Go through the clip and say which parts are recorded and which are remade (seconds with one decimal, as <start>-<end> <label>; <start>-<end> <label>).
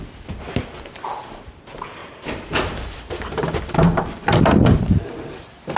0.0-2.0 recorded; 2.0-5.8 remade